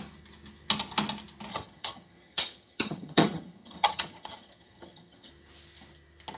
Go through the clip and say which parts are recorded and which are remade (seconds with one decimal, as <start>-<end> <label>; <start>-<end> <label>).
0.0-1.5 recorded; 1.5-5.3 remade; 5.3-6.4 recorded